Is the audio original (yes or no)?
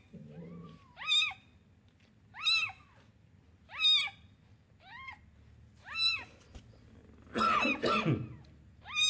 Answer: yes